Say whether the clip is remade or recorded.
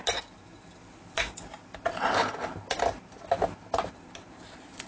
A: recorded